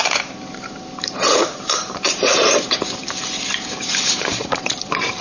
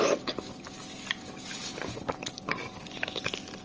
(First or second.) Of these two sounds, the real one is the second